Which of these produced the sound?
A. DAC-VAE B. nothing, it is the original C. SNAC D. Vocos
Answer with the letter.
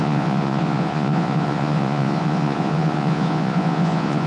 D